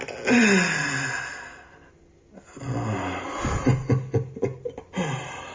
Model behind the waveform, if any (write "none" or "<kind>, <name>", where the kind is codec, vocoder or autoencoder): none